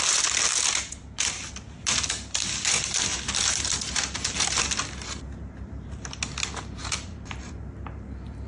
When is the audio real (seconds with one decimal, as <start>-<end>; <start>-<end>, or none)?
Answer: 0.0-3.1; 4.6-6.8; 7.5-8.5